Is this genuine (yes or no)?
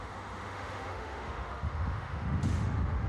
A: no